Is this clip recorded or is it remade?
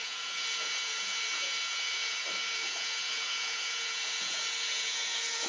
remade